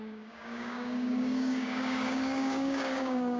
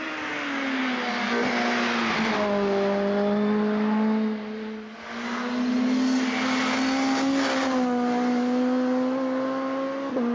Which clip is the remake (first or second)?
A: first